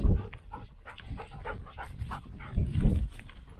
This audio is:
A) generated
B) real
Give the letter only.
B